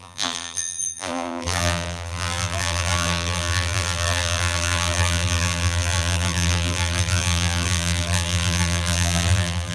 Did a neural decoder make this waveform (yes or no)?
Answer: yes